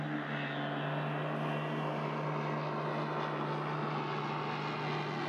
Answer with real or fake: real